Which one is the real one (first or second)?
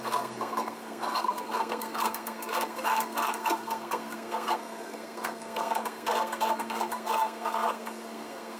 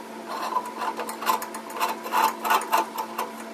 second